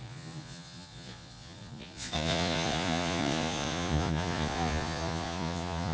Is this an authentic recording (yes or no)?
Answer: no